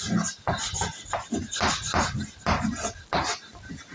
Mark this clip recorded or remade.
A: recorded